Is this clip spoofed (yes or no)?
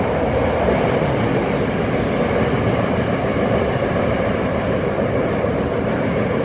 no